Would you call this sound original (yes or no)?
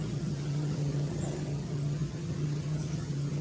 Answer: no